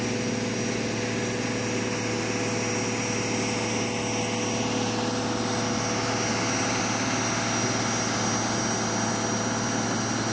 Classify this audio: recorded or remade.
recorded